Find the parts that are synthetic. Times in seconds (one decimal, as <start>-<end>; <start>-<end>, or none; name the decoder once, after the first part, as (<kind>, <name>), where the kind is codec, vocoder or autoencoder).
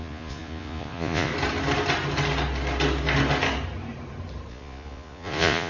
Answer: 0.0-1.3 (vocoder, Vocos); 4.5-5.7